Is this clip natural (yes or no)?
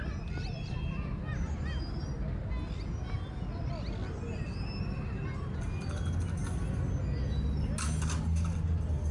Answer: yes